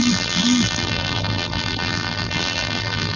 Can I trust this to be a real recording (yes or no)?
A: no